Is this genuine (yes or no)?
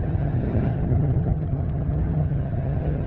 no